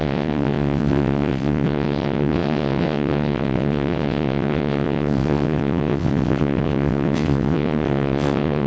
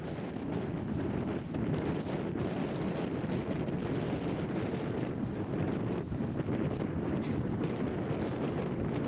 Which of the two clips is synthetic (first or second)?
first